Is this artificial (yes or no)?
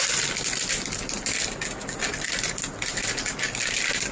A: no